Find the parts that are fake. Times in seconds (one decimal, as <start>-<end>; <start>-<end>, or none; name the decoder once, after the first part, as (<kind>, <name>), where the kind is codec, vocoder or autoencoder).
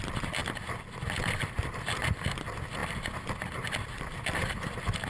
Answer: none